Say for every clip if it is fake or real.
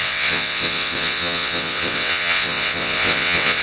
fake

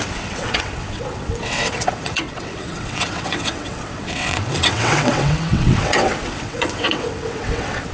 fake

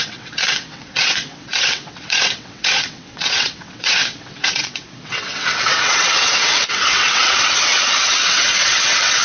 fake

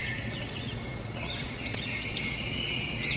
fake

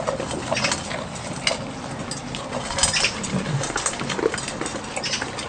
real